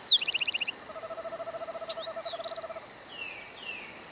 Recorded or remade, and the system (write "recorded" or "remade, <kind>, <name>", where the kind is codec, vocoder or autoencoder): recorded